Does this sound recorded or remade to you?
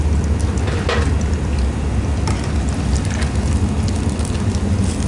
recorded